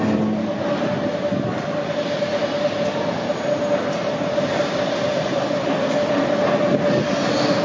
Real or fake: real